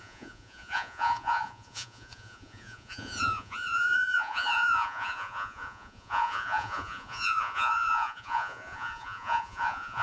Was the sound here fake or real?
fake